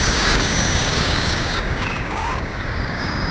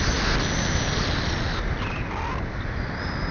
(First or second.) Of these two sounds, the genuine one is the second